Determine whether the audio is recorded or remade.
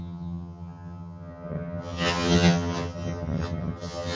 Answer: remade